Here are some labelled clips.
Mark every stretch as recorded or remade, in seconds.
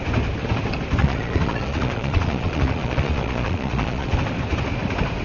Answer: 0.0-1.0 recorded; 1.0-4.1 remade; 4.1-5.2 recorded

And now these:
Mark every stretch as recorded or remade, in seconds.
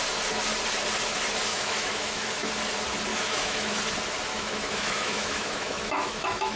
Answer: 0.0-1.5 recorded; 1.5-2.5 remade; 2.5-3.1 recorded; 3.1-3.8 remade; 3.8-4.3 recorded; 4.3-6.6 remade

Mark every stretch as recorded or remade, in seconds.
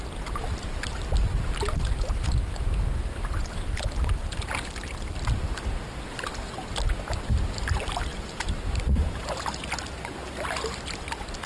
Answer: 0.0-8.1 recorded; 8.1-9.5 remade; 9.5-11.5 recorded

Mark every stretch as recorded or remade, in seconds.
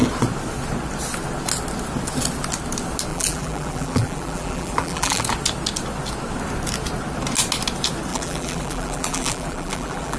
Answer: 0.0-3.1 recorded; 3.1-5.2 remade; 5.2-8.1 recorded; 8.1-10.2 remade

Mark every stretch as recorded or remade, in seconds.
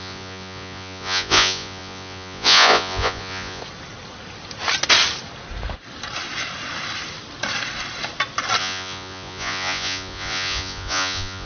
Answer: 0.0-3.6 remade; 3.6-8.6 recorded; 8.6-11.5 remade